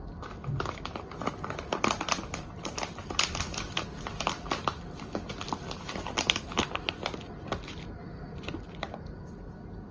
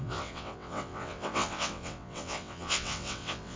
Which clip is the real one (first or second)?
first